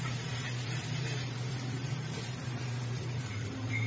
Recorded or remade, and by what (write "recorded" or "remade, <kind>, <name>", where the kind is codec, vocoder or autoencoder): remade, vocoder, BigVGAN v2